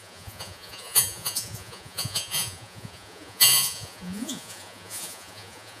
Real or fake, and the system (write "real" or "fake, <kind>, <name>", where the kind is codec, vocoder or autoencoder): fake, vocoder, Vocos